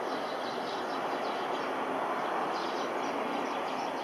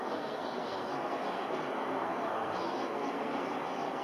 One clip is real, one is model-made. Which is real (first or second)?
first